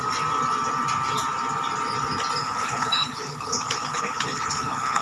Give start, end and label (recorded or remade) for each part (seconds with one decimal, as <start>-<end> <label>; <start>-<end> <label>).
0.0-2.4 recorded; 2.4-5.0 remade